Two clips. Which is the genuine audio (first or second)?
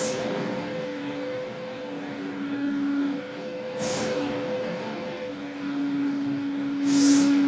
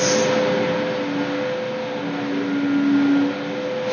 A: second